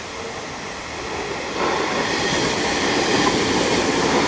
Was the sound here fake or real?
real